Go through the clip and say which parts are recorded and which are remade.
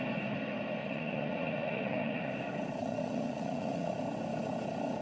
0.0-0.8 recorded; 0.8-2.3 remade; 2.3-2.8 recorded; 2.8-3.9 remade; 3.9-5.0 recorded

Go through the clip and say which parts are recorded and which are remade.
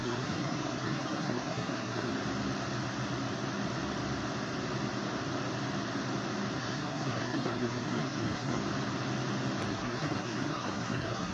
0.0-2.1 remade; 2.1-6.6 recorded; 6.6-8.6 remade; 8.6-9.7 recorded; 9.7-11.3 remade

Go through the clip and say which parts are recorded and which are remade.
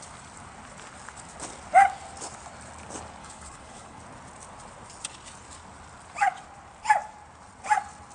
0.0-3.2 recorded; 3.2-4.0 remade; 4.0-8.1 recorded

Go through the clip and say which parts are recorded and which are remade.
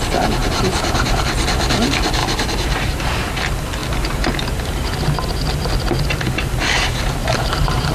0.0-0.4 recorded; 0.4-1.2 remade; 1.2-2.2 recorded; 2.2-2.9 remade; 2.9-7.2 recorded; 7.2-7.9 remade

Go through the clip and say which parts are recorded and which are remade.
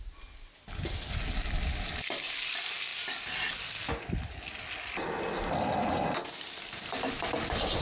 0.0-7.8 recorded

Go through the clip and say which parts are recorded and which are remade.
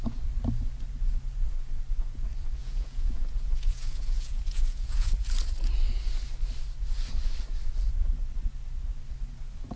0.0-2.6 recorded; 2.6-5.1 remade; 5.1-9.8 recorded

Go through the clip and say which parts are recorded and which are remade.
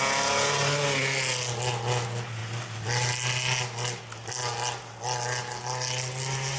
0.0-6.6 recorded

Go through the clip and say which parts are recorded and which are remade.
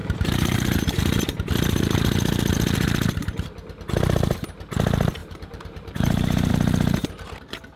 0.0-1.0 remade; 1.0-5.2 recorded; 5.2-6.5 remade; 6.5-7.8 recorded